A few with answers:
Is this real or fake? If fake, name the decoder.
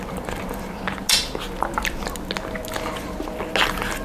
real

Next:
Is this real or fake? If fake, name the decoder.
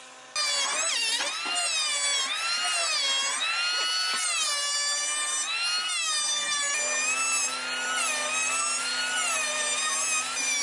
real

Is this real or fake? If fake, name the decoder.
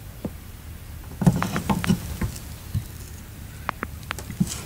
real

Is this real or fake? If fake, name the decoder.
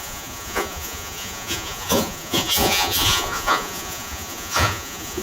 fake, vocoder, Vocos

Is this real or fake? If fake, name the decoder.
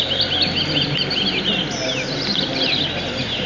real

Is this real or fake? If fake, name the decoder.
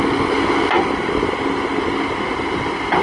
real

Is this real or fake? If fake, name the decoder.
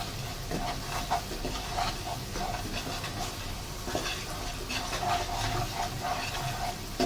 real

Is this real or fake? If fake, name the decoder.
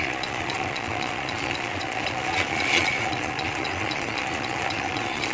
fake, vocoder, Vocos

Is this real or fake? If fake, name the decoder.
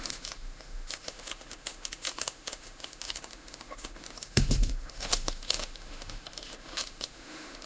fake, autoencoder, DAC-VAE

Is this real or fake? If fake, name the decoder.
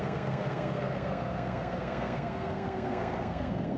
fake, codec, SNAC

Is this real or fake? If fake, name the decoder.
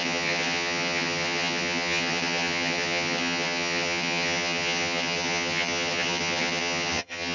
fake, vocoder, HiFi-GAN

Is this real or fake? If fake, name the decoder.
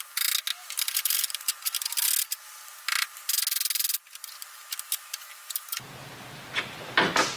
real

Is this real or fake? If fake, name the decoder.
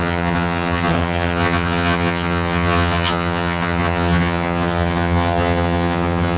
fake, vocoder, HiFi-GAN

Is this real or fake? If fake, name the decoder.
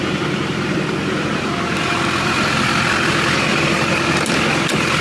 real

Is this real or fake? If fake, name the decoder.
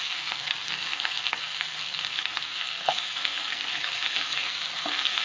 fake, codec, SNAC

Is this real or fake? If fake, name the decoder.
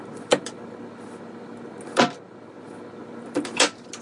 real